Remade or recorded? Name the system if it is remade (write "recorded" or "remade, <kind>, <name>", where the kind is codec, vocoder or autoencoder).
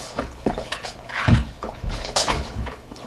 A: remade, codec, HILCodec